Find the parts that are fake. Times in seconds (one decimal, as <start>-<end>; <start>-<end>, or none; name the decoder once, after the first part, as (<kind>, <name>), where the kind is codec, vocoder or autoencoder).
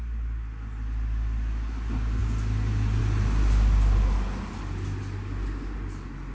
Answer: none